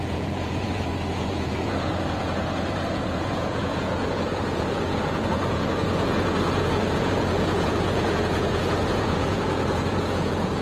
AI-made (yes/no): yes